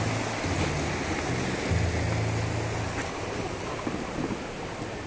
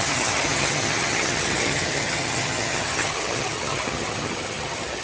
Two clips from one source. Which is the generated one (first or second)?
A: second